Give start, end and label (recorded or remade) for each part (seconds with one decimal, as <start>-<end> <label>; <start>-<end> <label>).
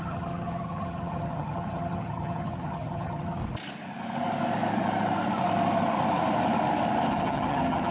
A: 0.0-3.4 remade; 3.4-7.1 recorded; 7.1-7.9 remade